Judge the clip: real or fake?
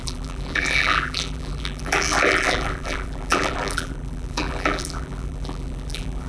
fake